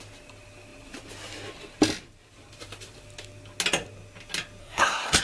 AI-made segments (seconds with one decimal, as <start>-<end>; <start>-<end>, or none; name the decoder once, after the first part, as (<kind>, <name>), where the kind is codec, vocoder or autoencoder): 4.6-5.2 (codec, SNAC)